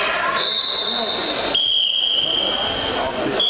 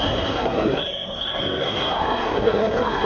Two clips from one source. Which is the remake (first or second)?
second